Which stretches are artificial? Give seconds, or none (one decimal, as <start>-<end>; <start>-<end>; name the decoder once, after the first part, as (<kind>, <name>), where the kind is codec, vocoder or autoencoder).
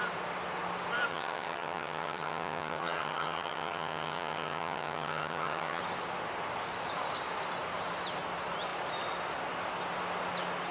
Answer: 1.1-5.8 (vocoder, HiFi-GAN)